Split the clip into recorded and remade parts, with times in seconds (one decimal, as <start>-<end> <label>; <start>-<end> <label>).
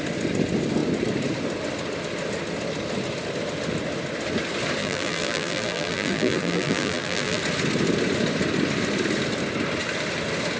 0.0-4.8 recorded; 4.8-7.4 remade; 7.4-10.6 recorded